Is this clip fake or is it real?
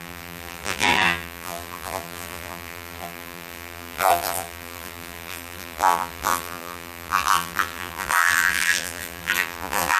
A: fake